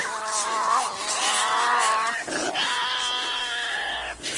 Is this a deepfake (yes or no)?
no